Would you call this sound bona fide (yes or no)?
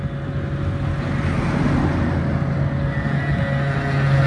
yes